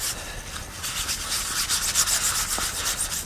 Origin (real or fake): real